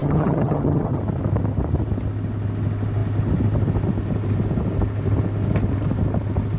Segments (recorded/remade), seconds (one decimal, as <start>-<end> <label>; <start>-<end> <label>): 0.0-1.0 remade; 1.0-6.6 recorded